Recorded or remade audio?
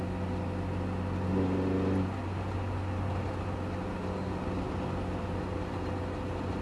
recorded